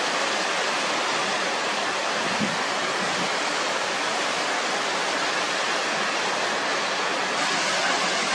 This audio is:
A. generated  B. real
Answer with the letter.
B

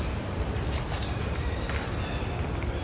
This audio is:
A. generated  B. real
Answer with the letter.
B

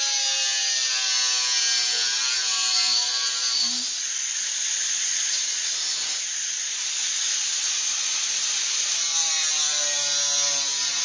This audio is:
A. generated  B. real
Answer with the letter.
B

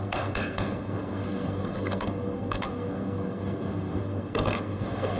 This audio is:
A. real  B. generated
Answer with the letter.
B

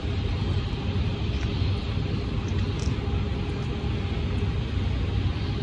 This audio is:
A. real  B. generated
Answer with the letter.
A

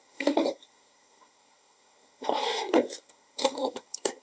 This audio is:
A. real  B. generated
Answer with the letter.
B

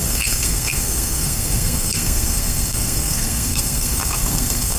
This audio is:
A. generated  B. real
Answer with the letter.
A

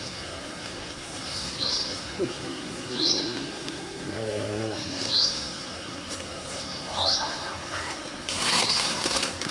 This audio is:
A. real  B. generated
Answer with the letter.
B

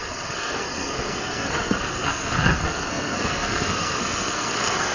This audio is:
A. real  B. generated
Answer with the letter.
B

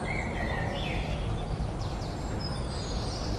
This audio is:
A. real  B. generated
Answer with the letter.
A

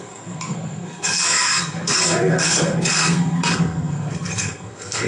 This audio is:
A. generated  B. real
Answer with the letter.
A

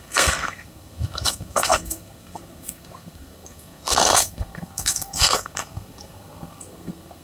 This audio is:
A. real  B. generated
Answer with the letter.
B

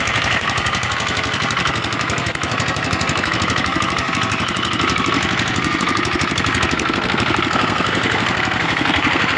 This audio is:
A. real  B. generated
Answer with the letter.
B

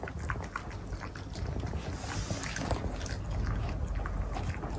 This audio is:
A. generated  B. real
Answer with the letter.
B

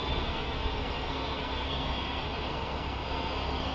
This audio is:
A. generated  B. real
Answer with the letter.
A